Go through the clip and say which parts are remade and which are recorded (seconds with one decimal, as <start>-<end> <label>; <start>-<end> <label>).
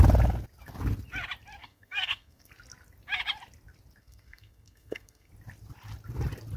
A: 0.0-1.6 recorded; 1.6-2.5 remade; 2.5-4.0 recorded; 4.0-5.3 remade; 5.3-6.6 recorded